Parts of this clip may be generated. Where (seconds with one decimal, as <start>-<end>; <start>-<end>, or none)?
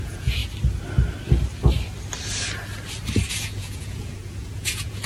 0.0-0.4; 3.3-5.1